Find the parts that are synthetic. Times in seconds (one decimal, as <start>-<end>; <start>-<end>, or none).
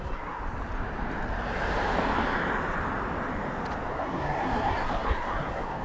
0.0-0.4; 3.9-5.8